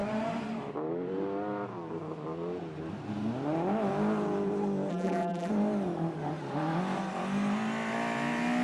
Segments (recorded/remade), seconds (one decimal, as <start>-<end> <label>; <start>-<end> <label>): 0.0-4.9 recorded; 4.9-5.5 remade; 5.5-8.6 recorded